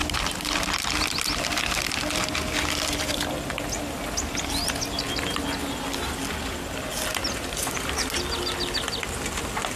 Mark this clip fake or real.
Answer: real